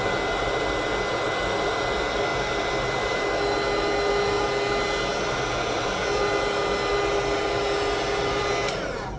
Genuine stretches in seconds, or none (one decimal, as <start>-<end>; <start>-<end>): 0.0-9.2